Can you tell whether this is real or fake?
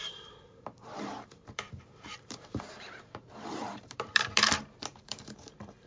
fake